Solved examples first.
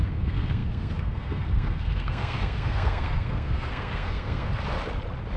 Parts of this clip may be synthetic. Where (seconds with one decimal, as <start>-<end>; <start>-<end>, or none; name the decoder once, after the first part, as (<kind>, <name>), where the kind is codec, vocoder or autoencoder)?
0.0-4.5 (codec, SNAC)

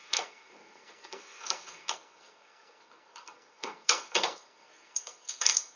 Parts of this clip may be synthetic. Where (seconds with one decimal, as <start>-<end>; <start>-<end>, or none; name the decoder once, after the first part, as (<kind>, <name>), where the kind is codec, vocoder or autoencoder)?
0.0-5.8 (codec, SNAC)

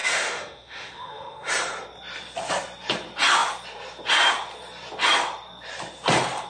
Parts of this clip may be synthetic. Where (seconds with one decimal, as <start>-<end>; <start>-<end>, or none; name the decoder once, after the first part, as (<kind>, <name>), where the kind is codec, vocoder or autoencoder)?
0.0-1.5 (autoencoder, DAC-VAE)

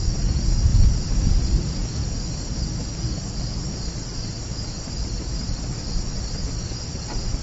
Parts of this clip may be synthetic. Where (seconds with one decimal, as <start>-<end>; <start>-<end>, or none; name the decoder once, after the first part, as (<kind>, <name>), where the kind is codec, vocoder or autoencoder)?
0.7-1.6 (vocoder, BigVGAN v2)

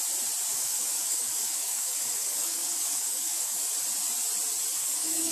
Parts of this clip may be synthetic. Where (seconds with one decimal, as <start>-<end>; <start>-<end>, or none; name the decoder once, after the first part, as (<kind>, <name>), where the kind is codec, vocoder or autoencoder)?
0.5-3.7 (codec, DAC); 4.7-5.3

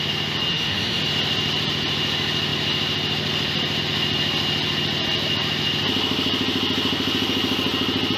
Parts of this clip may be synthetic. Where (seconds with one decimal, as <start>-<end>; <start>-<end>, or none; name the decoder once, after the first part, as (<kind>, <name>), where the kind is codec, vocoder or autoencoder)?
0.5-1.0 (autoencoder, DAC-VAE)

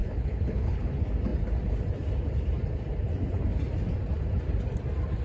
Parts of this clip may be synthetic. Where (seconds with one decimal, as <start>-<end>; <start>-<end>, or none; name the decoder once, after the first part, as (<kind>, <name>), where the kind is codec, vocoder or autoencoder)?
0.0-0.9 (codec, HILCodec)